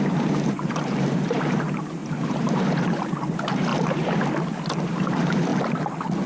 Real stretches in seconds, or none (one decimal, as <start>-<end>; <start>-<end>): 3.7-4.9; 5.5-6.3